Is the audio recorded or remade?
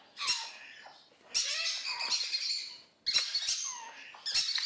recorded